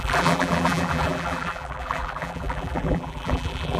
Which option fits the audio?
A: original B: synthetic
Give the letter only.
B